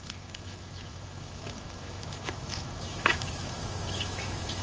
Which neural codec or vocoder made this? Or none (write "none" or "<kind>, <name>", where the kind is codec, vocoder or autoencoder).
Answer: autoencoder, DAC-VAE